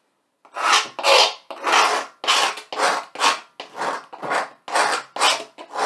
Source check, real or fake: real